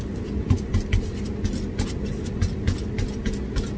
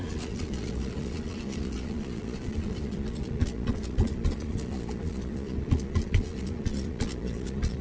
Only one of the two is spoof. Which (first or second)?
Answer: second